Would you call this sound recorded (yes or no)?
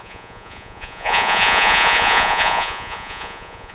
no